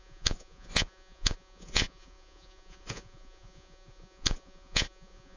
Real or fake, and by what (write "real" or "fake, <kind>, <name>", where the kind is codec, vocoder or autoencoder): fake, vocoder, Vocos